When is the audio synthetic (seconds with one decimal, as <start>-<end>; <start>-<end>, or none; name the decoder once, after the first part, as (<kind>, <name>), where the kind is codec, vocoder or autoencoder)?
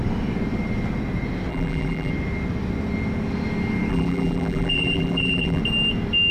1.5-2.1 (vocoder, BigVGAN v2); 3.9-5.6